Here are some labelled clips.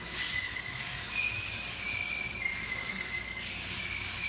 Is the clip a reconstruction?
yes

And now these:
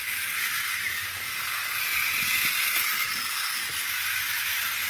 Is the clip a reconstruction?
no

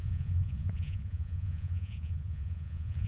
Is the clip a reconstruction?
yes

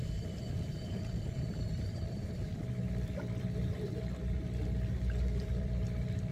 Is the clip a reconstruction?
yes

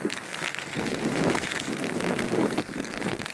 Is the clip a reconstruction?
yes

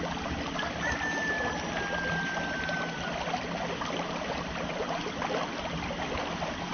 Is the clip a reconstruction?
no